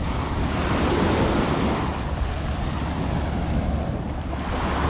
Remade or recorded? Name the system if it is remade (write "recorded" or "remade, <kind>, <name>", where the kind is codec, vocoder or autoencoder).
recorded